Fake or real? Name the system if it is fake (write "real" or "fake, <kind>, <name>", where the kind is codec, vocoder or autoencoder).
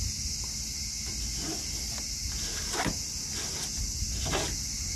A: real